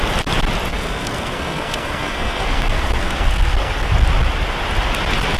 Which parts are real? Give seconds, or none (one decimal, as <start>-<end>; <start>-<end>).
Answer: 0.0-0.7; 3.9-5.4